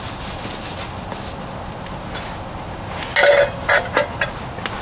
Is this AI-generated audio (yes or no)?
no